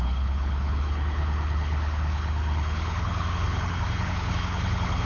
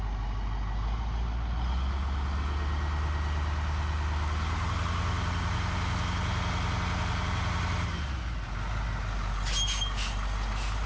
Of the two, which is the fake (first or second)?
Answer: first